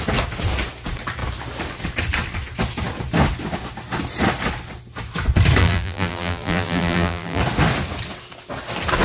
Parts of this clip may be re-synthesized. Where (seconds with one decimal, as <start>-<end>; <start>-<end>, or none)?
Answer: 5.6-7.4